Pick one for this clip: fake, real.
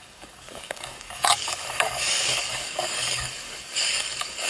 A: fake